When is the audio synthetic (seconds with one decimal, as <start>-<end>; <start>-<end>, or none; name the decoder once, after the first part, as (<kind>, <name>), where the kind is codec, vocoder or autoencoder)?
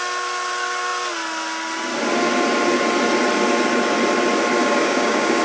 4.6-5.4 (codec, DAC)